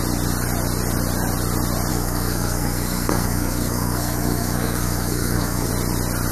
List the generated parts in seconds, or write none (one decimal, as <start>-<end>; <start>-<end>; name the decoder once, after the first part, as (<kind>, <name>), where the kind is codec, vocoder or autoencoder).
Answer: 1.9-5.7 (codec, SNAC)